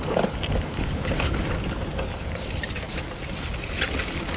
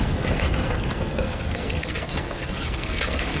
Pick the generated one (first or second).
second